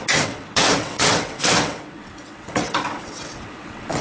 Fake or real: fake